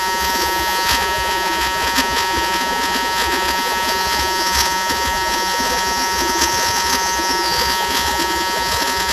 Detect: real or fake fake